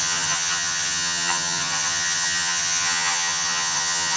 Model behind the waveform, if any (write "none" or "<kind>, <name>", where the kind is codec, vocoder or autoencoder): vocoder, HiFi-GAN